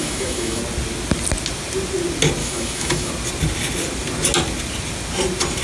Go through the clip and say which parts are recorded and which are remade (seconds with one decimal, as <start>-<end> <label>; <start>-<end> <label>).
0.0-0.6 remade; 0.6-2.4 recorded; 2.4-3.1 remade; 3.1-5.6 recorded